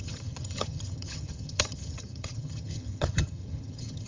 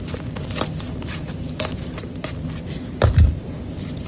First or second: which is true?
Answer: second